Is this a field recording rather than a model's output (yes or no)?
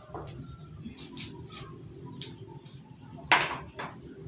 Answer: yes